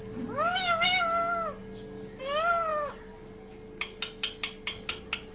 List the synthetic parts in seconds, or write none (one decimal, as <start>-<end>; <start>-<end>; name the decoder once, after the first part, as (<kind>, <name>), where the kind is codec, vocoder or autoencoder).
none